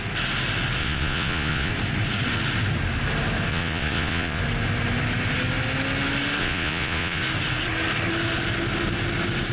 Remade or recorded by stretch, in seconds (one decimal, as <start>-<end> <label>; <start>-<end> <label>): 0.0-0.8 recorded; 0.8-1.7 remade; 1.7-3.5 recorded; 3.5-4.4 remade; 4.4-6.4 recorded; 6.4-7.2 remade; 7.2-9.5 recorded